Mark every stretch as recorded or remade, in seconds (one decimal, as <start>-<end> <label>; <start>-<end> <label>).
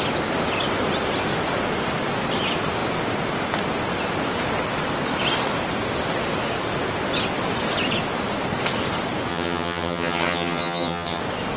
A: 0.0-9.3 recorded; 9.3-11.2 remade; 11.2-11.6 recorded